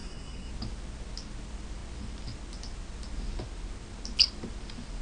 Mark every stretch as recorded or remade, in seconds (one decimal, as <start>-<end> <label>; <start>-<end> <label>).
0.0-0.5 remade; 0.5-5.0 recorded